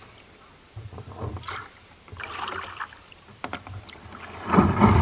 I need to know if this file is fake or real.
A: fake